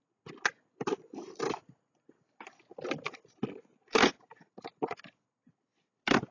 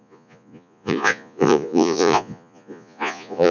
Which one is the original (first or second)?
first